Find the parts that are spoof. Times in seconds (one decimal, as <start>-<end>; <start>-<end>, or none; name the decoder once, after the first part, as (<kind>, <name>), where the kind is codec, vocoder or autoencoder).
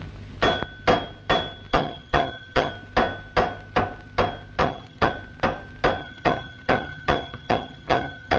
1.7-2.7 (vocoder, HiFi-GAN); 4.6-5.1; 6.0-8.4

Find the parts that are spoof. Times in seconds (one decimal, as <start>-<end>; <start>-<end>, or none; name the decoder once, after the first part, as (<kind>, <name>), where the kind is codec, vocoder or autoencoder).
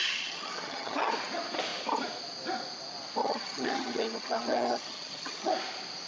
0.0-1.1 (vocoder, HiFi-GAN); 3.2-5.5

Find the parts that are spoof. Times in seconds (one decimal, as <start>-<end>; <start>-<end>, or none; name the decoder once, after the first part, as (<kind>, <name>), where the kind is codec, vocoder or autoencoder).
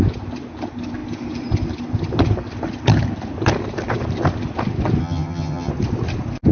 5.0-5.7 (vocoder, HiFi-GAN)